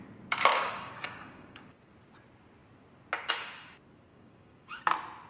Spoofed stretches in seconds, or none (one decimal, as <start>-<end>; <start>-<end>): 0.5-1.9; 4.1-4.8